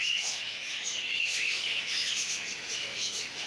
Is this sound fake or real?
fake